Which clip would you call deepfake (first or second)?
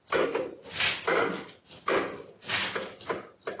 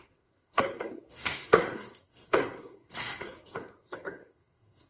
second